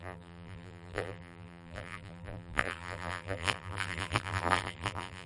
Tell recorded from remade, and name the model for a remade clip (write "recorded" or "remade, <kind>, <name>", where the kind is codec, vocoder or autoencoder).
remade, vocoder, BigVGAN v2